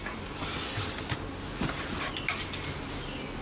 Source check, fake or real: real